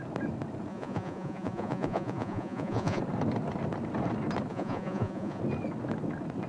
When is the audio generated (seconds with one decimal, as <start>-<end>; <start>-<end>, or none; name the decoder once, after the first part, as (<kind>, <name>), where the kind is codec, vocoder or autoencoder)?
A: 0.7-3.0 (vocoder, Vocos); 4.5-5.4